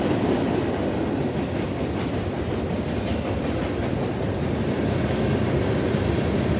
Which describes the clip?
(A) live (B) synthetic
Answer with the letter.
A